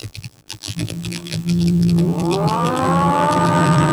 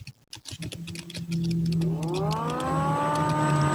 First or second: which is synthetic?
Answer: first